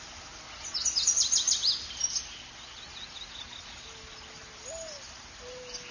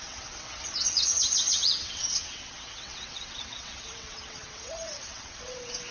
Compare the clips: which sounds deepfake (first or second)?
second